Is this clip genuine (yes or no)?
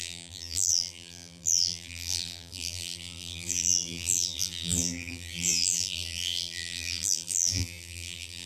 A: no